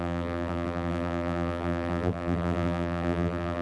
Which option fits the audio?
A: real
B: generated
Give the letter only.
B